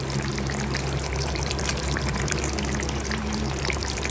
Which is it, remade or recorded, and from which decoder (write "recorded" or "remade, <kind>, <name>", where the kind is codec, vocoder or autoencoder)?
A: remade, vocoder, BigVGAN v2